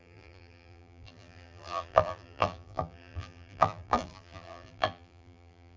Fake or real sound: fake